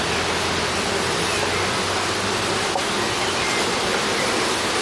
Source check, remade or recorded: recorded